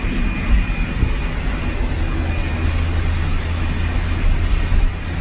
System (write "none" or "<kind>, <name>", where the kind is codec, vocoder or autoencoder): none